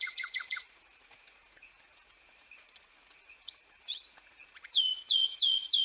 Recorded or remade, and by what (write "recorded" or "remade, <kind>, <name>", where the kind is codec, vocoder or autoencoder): remade, vocoder, Vocos